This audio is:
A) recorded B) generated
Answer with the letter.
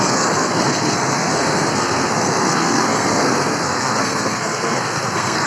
B